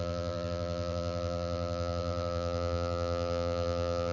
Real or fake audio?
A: fake